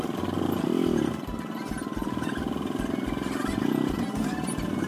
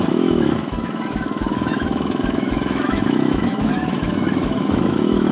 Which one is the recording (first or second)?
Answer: first